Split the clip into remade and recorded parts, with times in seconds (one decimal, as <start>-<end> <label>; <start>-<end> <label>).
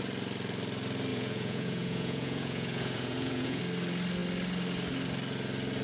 0.0-1.1 recorded; 1.1-3.6 remade; 3.6-5.8 recorded